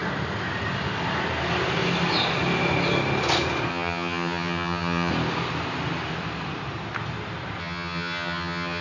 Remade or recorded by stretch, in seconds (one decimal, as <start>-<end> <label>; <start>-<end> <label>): 0.0-3.7 recorded; 3.7-5.1 remade; 5.1-7.6 recorded; 7.6-8.8 remade